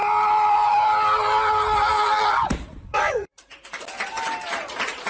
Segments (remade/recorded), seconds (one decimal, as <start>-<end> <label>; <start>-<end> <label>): 0.0-2.9 recorded; 2.9-3.5 remade; 3.5-5.1 recorded